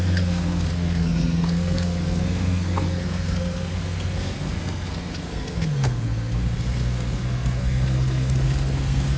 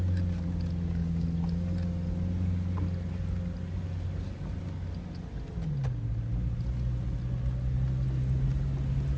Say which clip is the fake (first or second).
first